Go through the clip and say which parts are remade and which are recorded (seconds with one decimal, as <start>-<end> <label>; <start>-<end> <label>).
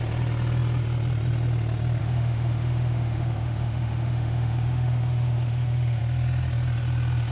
0.0-2.0 recorded; 2.0-6.0 remade; 6.0-7.3 recorded